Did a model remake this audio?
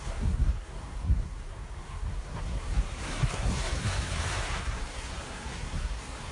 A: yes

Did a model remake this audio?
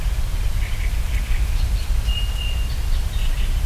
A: no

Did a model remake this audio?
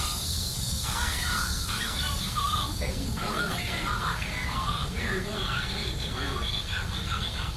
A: yes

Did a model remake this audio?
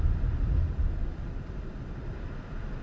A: yes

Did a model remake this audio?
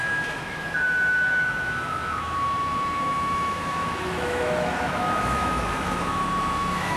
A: yes